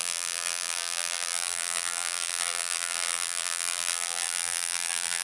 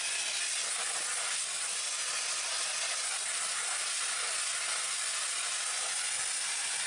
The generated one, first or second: first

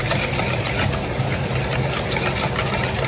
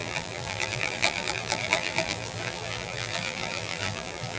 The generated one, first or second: second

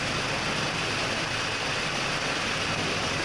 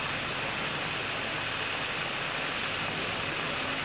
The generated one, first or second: first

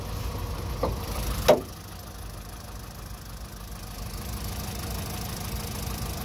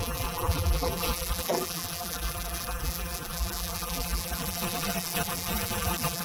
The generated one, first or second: second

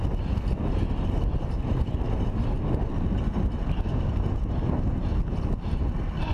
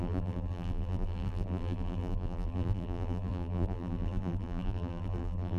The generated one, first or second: second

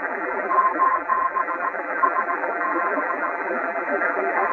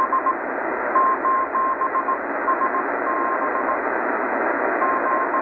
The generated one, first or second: first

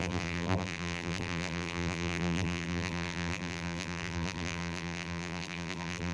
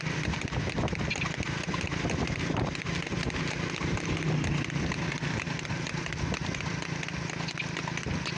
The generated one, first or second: first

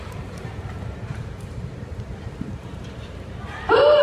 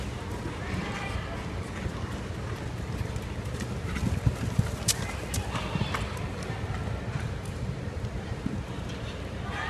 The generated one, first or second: first